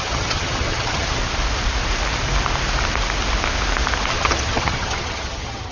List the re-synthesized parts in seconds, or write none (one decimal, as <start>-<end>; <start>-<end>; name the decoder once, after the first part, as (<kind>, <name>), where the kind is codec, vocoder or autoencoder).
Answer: 0.0-1.2 (vocoder, HiFi-GAN); 4.1-5.7